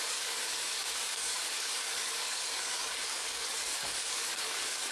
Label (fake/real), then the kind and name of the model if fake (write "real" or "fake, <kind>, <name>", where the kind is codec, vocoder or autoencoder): fake, codec, DAC